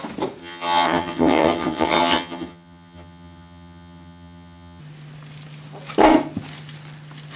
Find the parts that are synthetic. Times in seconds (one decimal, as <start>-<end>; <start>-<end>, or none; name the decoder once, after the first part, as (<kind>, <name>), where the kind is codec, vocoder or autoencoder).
0.4-4.8 (vocoder, HiFi-GAN)

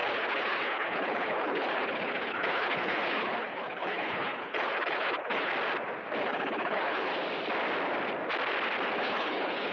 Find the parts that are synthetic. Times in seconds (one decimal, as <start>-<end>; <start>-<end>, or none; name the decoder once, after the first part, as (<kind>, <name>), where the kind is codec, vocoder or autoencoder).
0.0-5.5 (codec, HILCodec); 6.2-7.1; 9.0-9.7

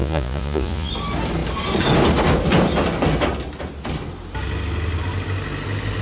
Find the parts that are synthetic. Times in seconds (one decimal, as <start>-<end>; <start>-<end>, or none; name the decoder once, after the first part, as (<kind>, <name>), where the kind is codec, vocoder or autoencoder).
0.0-0.9 (vocoder, Vocos)

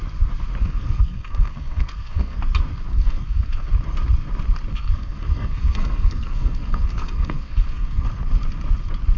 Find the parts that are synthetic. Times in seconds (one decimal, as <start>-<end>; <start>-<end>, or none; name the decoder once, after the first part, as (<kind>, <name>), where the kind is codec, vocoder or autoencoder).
0.6-2.4 (codec, SNAC); 2.9-3.7; 4.7-8.1

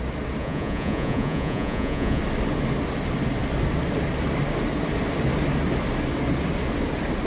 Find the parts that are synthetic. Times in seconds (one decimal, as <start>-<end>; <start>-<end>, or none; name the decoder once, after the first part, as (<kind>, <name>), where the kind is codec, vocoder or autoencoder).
0.4-2.2 (vocoder, Vocos)

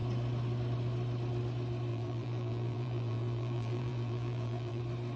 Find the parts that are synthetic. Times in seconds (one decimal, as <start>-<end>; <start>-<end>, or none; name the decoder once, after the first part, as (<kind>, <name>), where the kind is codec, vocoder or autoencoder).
1.9-4.8 (vocoder, BigVGAN v2)

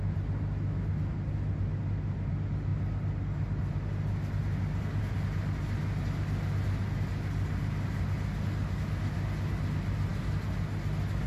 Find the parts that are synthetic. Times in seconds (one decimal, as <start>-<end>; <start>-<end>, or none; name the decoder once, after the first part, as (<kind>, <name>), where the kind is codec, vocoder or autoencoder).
none